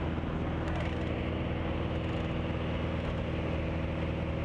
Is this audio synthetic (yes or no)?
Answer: no